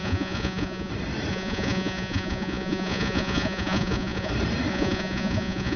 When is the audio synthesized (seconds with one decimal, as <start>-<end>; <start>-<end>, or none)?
0.0-0.9; 1.3-4.3; 4.7-5.8